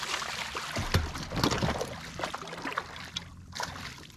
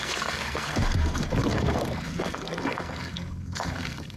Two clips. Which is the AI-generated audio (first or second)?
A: second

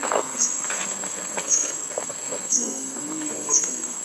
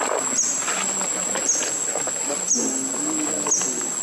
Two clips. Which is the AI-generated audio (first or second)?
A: first